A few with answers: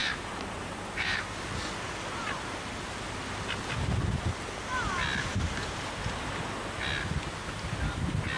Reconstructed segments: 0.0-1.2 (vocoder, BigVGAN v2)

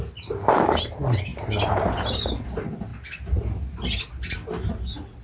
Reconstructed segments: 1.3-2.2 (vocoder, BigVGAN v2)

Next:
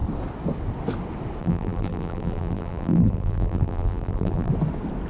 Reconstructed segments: 1.4-4.5 (vocoder, BigVGAN v2)

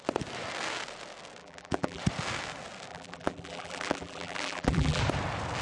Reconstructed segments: 1.4-2.0 (vocoder, BigVGAN v2); 2.9-5.0

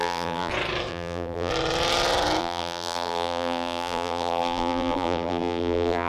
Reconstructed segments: 0.0-0.5 (vocoder, BigVGAN v2); 0.9-1.5; 2.4-6.1

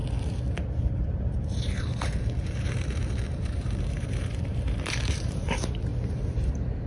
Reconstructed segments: 1.4-5.9 (vocoder, BigVGAN v2); 6.4-6.9

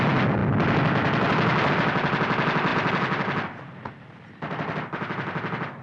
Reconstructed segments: none

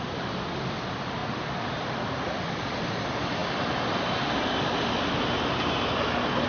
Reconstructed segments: none